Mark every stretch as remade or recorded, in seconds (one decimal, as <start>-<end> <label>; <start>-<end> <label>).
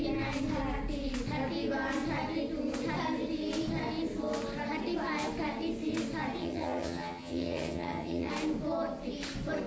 0.0-6.4 recorded; 6.4-8.3 remade; 8.3-9.7 recorded